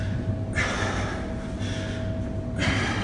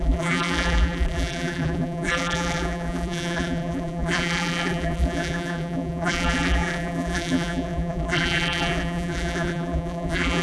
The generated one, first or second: second